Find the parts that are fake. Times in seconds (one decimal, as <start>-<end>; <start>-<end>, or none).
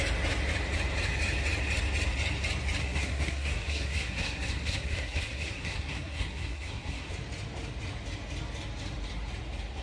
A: 2.8-7.1